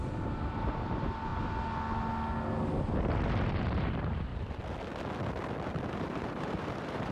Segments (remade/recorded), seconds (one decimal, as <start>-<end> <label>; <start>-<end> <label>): 0.0-1.3 remade; 1.3-3.6 recorded; 3.6-4.3 remade; 4.3-5.7 recorded; 5.7-7.1 remade

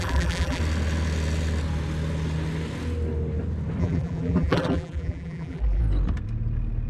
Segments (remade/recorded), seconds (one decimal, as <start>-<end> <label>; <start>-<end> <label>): 0.0-0.6 remade; 0.6-3.8 recorded; 3.8-5.8 remade; 5.8-6.9 recorded

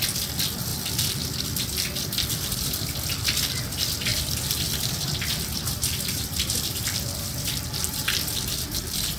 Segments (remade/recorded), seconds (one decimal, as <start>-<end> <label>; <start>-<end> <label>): 0.0-4.1 recorded; 4.1-7.6 remade; 7.6-9.2 recorded

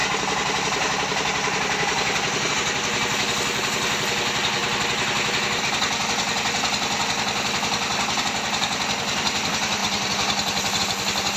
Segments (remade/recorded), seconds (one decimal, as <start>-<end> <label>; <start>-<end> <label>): 0.0-11.4 recorded

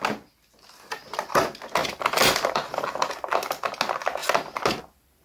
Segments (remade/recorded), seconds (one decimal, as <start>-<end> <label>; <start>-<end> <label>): 0.0-1.8 recorded; 1.8-3.3 remade; 3.3-5.2 recorded

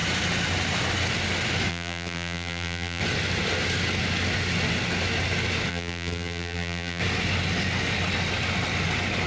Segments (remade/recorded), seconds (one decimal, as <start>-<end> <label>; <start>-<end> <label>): 0.0-1.7 recorded; 1.7-3.0 remade; 3.0-5.7 recorded; 5.7-7.0 remade; 7.0-9.3 recorded

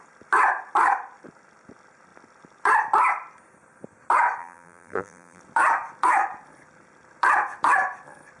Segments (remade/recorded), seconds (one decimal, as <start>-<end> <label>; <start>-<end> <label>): 0.0-4.4 recorded; 4.4-5.4 remade; 5.4-8.4 recorded

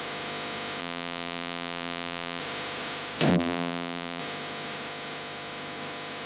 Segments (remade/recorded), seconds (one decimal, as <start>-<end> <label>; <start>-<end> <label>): 0.0-0.8 recorded; 0.8-2.4 remade; 2.4-3.3 recorded; 3.3-4.2 remade; 4.2-6.3 recorded